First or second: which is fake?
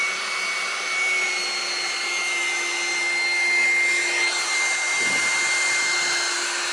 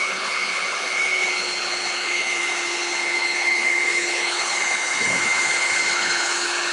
second